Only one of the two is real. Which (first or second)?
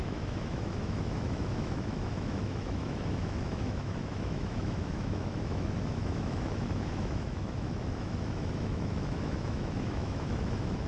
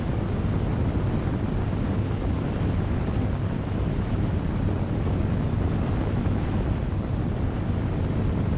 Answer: second